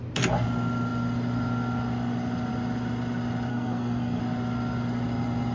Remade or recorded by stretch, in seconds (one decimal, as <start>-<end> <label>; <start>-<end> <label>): 0.0-3.5 recorded; 3.5-4.2 remade; 4.2-5.5 recorded